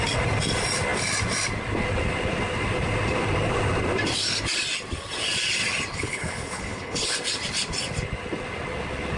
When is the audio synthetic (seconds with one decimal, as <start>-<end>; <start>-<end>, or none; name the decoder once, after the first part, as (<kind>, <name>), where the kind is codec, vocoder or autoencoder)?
5.9-7.2 (codec, HILCodec)